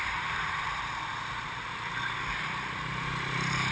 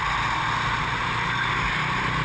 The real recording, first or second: second